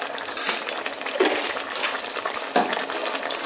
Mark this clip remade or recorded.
recorded